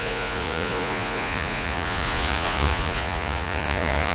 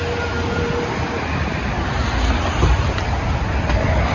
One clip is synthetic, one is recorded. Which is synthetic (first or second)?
first